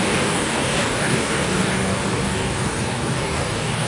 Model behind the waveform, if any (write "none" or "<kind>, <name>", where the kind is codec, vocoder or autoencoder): codec, DAC